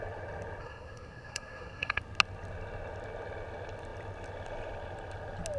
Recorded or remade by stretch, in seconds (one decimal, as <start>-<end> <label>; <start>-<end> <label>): 0.0-0.6 recorded; 0.6-2.0 remade; 2.0-5.6 recorded